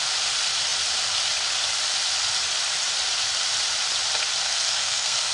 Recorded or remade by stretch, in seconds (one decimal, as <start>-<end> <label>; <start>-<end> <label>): 0.0-4.4 recorded; 4.4-5.3 remade